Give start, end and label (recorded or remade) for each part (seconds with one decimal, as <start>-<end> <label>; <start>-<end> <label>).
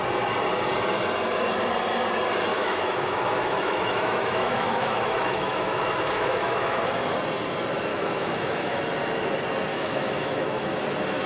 0.0-2.5 recorded; 2.5-6.9 remade; 6.9-7.9 recorded; 7.9-8.8 remade; 8.8-9.7 recorded; 9.7-10.7 remade; 10.7-11.3 recorded